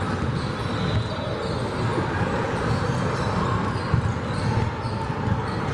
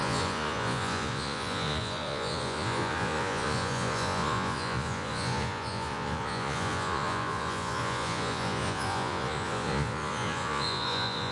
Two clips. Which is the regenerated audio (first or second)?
second